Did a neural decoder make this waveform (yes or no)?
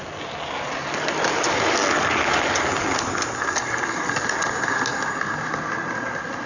no